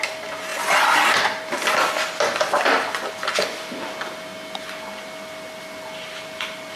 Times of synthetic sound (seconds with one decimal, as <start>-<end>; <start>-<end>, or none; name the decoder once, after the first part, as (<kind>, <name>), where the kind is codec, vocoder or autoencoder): none